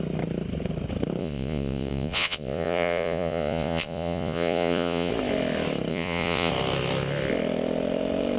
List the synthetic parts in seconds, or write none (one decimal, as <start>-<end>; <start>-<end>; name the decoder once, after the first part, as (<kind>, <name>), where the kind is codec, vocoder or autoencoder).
1.2-5.1 (vocoder, Vocos); 5.9-6.5